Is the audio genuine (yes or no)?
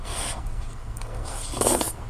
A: no